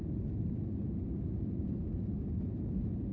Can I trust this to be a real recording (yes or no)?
yes